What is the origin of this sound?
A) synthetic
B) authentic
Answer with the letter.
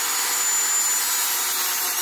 B